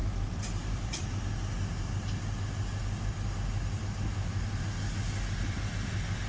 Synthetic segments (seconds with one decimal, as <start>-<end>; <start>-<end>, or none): 0.0-1.1